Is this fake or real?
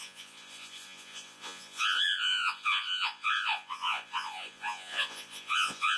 fake